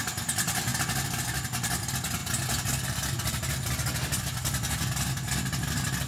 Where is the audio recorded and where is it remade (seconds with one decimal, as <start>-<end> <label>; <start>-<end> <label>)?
0.0-6.1 recorded